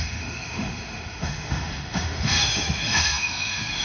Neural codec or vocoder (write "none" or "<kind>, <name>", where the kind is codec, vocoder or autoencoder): autoencoder, DAC-VAE